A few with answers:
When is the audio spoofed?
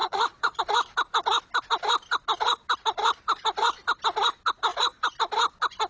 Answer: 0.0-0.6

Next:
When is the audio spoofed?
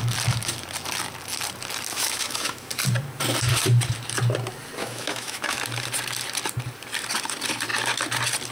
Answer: 1.9-2.7; 4.8-5.6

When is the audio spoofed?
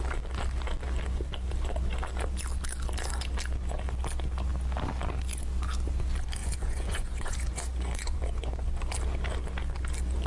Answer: 6.4-8.7